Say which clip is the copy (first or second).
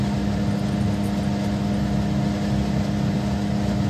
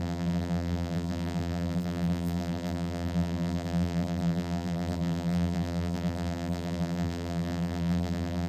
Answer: second